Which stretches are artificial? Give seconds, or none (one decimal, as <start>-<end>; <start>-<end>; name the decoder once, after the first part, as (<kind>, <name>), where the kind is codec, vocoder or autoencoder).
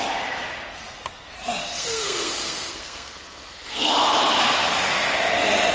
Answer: 1.6-3.9 (codec, SNAC)